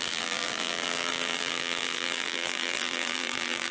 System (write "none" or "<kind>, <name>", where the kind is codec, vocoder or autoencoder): vocoder, BigVGAN v2